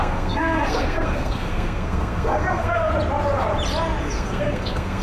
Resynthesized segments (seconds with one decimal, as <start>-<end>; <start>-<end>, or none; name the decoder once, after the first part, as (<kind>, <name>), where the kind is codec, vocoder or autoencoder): 0.0-2.9 (codec, SNAC); 4.0-5.0